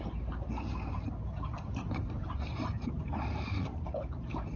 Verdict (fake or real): fake